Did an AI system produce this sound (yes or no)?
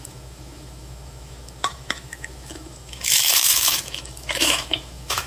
yes